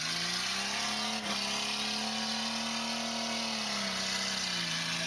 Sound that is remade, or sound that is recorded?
recorded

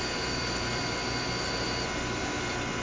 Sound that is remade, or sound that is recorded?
remade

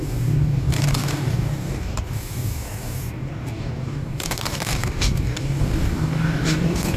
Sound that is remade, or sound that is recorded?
remade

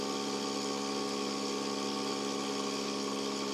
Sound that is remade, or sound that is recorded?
recorded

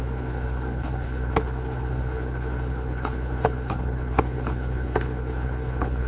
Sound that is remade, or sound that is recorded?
remade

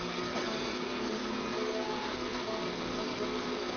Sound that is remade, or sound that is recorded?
remade